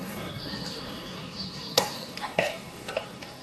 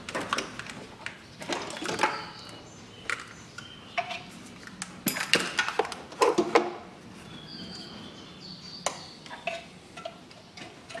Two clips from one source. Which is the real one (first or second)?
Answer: second